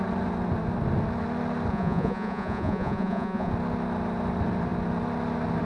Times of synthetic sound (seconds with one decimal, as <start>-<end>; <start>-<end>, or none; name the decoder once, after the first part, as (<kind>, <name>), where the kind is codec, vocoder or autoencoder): 1.7-3.5 (vocoder, Vocos)